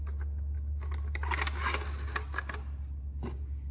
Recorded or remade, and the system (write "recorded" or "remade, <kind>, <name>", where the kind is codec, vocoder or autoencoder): recorded